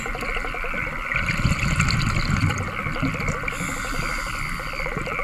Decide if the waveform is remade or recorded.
recorded